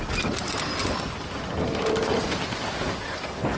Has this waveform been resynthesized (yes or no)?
no